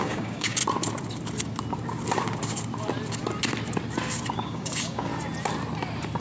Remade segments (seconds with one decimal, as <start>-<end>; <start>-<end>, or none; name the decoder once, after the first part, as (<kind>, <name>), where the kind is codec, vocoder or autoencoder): 0.0-0.6 (codec, DAC); 4.3-5.1